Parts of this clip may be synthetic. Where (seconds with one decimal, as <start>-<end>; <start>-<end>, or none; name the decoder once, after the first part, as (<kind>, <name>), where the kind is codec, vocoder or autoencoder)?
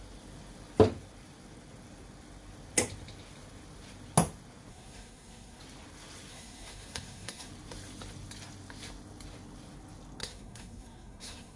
4.7-5.6 (codec, SNAC); 6.3-7.5; 10.2-11.6